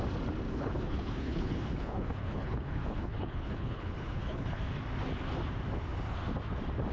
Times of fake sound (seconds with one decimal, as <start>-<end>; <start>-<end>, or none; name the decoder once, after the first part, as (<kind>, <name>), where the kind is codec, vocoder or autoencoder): 0.5-4.6 (codec, HILCodec)